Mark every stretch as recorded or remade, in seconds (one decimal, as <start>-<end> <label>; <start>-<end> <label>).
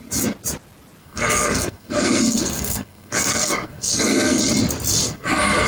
0.0-1.0 recorded; 1.0-4.4 remade; 4.4-5.0 recorded; 5.0-5.7 remade